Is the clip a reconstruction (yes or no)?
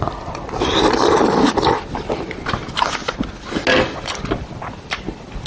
no